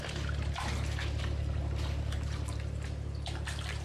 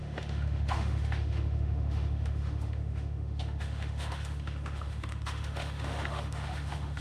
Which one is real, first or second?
first